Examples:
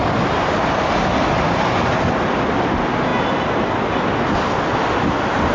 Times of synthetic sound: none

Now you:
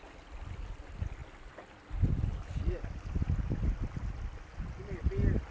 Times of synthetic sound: none

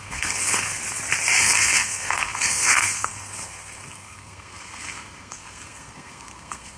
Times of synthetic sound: 0.0-0.8 (codec, SNAC); 1.4-6.8

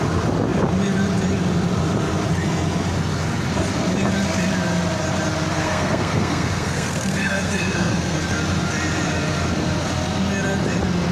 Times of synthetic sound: 5.5-8.4 (codec, SNAC)

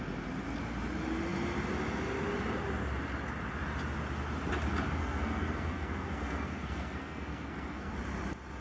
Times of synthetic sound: 5.0-7.9 (codec, SNAC)

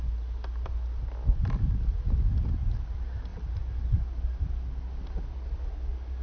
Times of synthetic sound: none